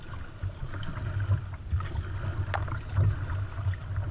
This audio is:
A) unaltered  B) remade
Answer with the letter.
A